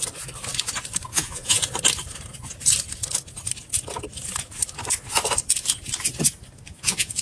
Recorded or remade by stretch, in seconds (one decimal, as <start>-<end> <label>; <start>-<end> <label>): 0.0-1.1 recorded; 1.1-1.6 remade; 1.6-6.7 recorded; 6.7-7.2 remade